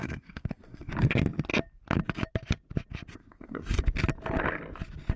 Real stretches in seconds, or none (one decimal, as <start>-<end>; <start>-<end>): 0.9-3.1; 3.8-5.2